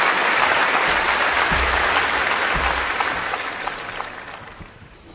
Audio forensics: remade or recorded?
recorded